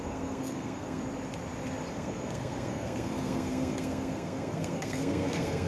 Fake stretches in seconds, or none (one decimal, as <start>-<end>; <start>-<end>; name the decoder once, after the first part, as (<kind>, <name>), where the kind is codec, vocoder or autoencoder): 0.0-1.0 (codec, SNAC); 1.9-5.7